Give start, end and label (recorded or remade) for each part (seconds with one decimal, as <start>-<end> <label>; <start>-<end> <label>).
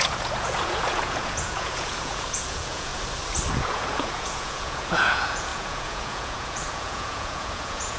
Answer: 0.0-2.9 remade; 2.9-3.5 recorded; 3.5-8.0 remade